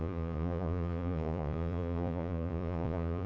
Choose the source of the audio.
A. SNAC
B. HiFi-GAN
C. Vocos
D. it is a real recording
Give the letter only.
C